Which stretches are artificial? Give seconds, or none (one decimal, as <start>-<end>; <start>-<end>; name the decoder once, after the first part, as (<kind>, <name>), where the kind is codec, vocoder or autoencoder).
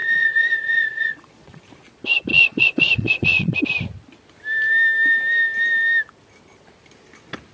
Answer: 0.0-1.6 (vocoder, Vocos); 2.3-3.6